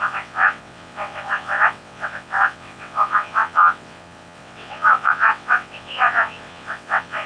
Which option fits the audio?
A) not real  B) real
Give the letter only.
A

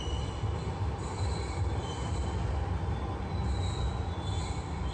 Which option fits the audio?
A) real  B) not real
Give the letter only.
A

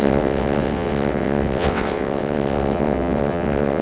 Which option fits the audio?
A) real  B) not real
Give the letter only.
B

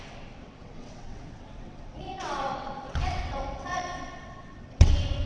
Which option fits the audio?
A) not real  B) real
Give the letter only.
A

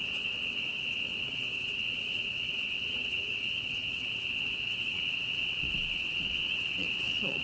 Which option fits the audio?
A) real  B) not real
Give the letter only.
B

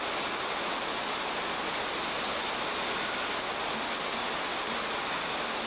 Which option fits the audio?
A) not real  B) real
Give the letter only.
B